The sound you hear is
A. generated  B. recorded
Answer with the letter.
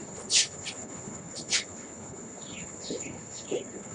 A